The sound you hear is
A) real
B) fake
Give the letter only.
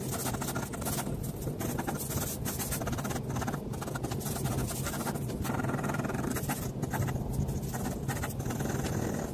A